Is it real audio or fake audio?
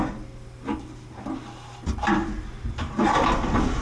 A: real